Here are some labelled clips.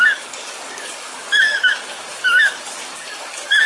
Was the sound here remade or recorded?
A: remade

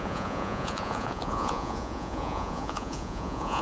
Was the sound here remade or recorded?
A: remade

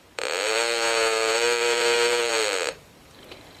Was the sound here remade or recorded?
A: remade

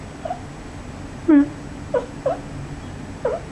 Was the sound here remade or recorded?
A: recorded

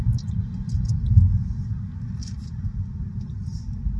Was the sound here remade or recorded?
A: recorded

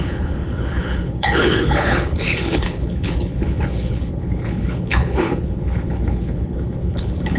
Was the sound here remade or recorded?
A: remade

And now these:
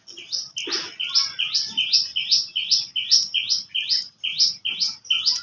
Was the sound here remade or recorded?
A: recorded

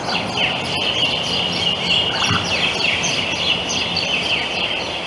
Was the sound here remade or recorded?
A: recorded